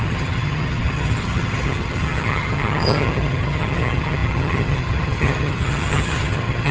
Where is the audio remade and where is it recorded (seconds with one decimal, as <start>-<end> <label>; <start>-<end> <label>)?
0.0-6.7 remade